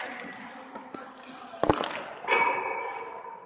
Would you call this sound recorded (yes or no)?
yes